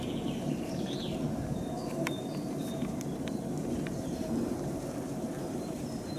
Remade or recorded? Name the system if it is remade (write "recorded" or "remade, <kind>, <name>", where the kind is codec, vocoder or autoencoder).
remade, vocoder, BigVGAN v2